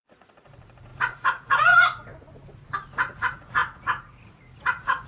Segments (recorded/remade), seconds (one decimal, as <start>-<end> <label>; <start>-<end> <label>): 0.0-2.1 remade; 2.1-2.9 recorded; 2.9-5.1 remade